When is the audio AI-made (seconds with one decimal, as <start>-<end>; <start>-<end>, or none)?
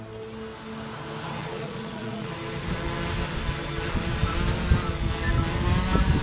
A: 1.4-2.3